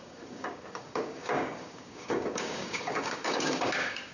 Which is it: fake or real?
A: fake